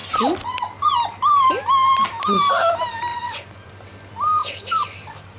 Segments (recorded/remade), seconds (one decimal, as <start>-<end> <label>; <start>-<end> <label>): 0.0-3.1 recorded; 3.1-3.7 remade; 3.7-5.4 recorded

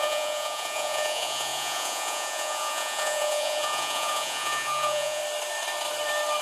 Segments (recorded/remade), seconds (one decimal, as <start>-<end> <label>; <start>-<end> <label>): 0.0-5.2 remade; 5.2-6.4 recorded

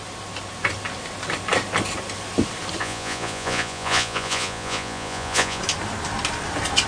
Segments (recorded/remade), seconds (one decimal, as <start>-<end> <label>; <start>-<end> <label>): 0.0-2.8 recorded; 2.8-5.6 remade; 5.6-6.9 recorded

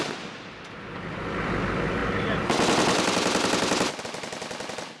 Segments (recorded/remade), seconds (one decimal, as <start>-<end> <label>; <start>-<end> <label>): 0.0-5.0 recorded

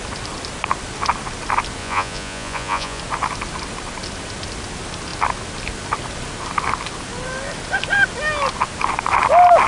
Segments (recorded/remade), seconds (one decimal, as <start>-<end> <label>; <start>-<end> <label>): 0.0-1.8 recorded; 1.8-3.0 remade; 3.0-9.7 recorded

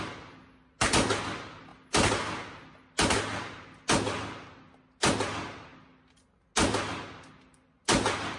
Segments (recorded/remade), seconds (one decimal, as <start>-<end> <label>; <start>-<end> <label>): 0.0-8.4 recorded

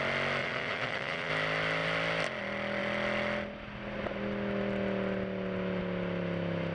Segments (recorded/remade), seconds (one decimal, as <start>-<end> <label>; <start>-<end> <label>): 0.0-0.4 recorded; 0.4-1.3 remade; 1.3-6.7 recorded

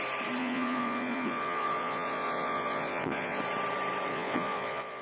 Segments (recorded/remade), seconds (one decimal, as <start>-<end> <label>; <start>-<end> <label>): 0.0-0.4 recorded; 0.4-3.4 remade; 3.4-4.1 recorded; 4.1-5.0 remade